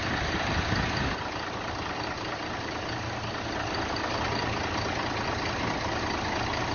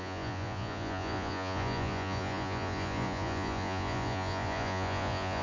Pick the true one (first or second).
first